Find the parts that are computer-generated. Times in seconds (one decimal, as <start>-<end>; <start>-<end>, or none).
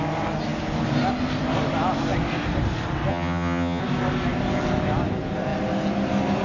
3.1-3.8